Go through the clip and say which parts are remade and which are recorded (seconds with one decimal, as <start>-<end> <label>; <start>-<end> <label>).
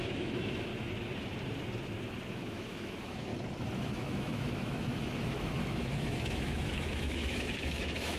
0.0-0.7 remade; 0.7-2.3 recorded; 2.3-3.3 remade; 3.3-3.8 recorded; 3.8-8.2 remade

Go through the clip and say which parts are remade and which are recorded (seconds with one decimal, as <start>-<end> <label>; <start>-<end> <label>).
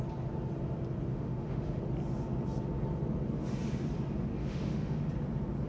0.0-1.1 recorded; 1.1-1.8 remade; 1.8-4.4 recorded; 4.4-5.0 remade; 5.0-5.7 recorded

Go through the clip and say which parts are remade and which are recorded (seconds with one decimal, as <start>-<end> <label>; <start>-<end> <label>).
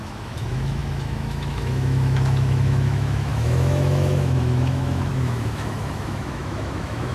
0.0-7.1 remade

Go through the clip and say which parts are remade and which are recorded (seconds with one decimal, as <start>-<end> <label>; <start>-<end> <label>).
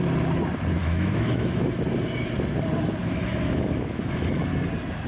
0.0-0.8 recorded; 0.8-1.6 remade; 1.6-3.0 recorded; 3.0-4.4 remade; 4.4-5.1 recorded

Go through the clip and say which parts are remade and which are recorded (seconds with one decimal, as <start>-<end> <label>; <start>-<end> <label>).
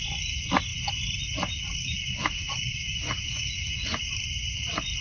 0.0-1.8 recorded; 1.8-4.0 remade; 4.0-5.0 recorded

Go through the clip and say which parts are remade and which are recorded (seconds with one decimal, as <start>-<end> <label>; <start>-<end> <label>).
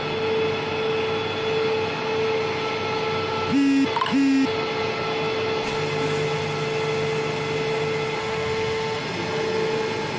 0.0-8.2 recorded; 8.2-9.0 remade; 9.0-10.2 recorded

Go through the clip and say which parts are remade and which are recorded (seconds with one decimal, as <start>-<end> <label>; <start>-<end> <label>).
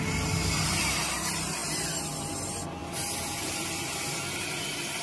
0.0-5.0 recorded